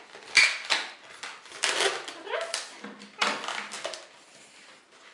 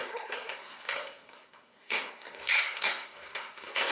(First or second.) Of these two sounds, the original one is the first